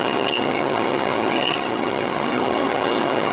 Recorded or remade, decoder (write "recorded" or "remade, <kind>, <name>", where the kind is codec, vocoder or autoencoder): remade, vocoder, HiFi-GAN